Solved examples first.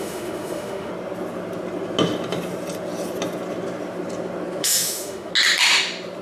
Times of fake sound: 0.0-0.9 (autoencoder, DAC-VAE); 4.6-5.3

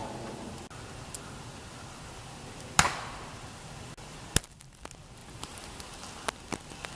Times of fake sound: 5.2-5.8 (vocoder, BigVGAN v2)

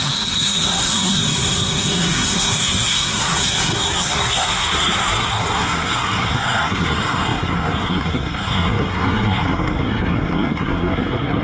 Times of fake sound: 0.0-11.4 (codec, SNAC)

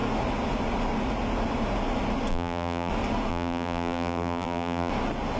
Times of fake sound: 2.3-2.9 (vocoder, BigVGAN v2); 3.3-4.9